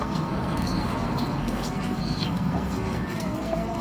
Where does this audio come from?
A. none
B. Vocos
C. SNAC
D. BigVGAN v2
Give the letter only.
C